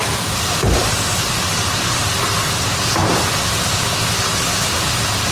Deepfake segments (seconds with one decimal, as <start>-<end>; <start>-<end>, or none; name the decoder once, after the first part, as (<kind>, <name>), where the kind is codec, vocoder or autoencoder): none